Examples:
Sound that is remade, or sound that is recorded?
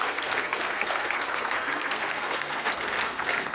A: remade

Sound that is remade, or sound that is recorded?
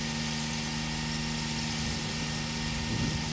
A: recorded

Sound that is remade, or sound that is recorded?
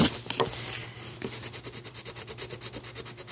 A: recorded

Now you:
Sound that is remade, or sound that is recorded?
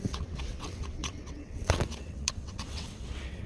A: remade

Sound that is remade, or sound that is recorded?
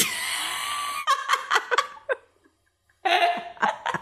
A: recorded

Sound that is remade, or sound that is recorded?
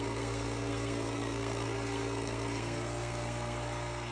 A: remade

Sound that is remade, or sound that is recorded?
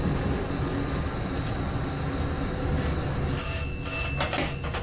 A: recorded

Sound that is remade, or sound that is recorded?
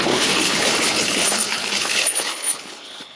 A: remade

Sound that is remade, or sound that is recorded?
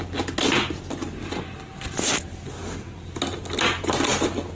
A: recorded